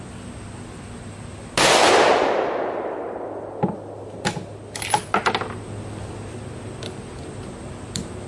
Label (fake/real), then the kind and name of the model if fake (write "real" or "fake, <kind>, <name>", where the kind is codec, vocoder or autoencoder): real